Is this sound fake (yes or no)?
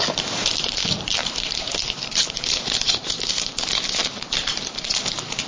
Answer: yes